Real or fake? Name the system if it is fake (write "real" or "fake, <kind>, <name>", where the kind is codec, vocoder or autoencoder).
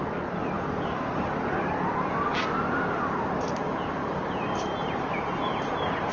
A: real